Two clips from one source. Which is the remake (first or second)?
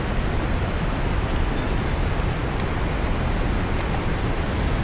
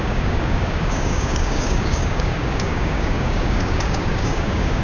second